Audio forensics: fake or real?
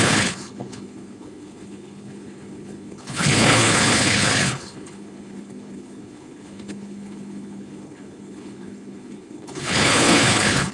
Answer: fake